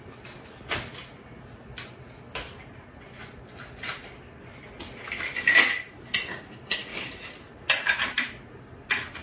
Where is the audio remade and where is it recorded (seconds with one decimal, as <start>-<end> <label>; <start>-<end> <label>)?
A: 0.0-9.2 recorded